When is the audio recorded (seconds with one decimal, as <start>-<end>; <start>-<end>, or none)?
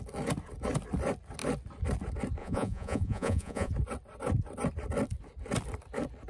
0.0-2.4; 3.7-6.3